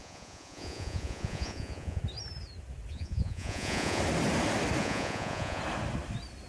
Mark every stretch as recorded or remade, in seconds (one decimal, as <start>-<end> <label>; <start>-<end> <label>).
0.0-2.0 remade; 2.0-2.9 recorded; 2.9-4.0 remade; 4.0-4.8 recorded; 4.8-5.6 remade; 5.6-6.5 recorded